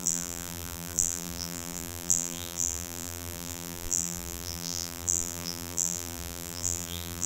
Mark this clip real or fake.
fake